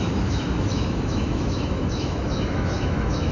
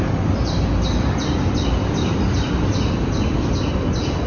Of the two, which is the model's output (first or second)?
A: first